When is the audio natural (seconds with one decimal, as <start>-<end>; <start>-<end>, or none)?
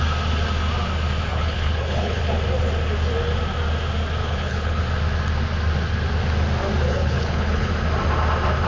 0.0-1.3; 2.2-4.2; 4.8-6.9; 7.7-8.7